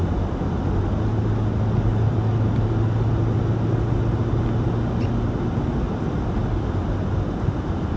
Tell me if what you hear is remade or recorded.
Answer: recorded